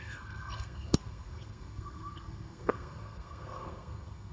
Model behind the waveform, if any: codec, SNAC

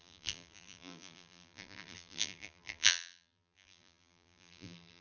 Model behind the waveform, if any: vocoder, BigVGAN v2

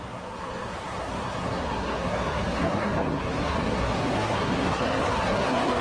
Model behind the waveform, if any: codec, SNAC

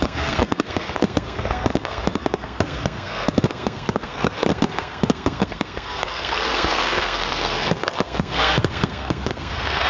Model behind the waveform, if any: codec, SNAC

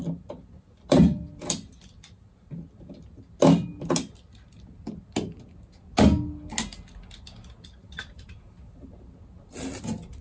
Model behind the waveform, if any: none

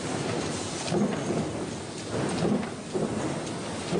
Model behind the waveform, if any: none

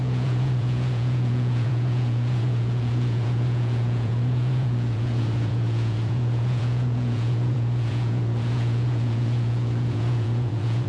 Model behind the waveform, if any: vocoder, Vocos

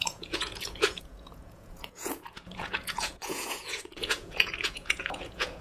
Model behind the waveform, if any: vocoder, Vocos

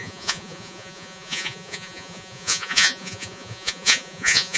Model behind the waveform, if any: vocoder, Vocos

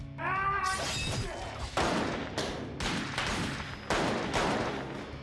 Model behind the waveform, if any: none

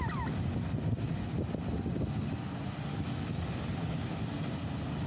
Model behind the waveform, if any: none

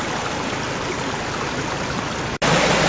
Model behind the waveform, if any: none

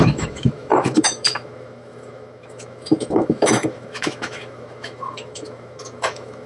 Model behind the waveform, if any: autoencoder, DAC-VAE